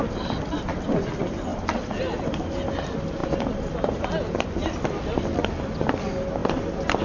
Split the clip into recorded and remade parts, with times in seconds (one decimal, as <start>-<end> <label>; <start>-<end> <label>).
0.0-1.5 recorded; 1.5-2.4 remade; 2.4-6.4 recorded; 6.4-7.0 remade